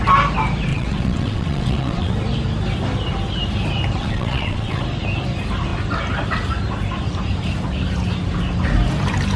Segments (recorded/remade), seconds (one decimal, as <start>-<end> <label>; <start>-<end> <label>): 0.0-0.7 recorded; 0.7-2.1 remade; 2.1-4.0 recorded; 4.0-4.8 remade; 4.8-9.4 recorded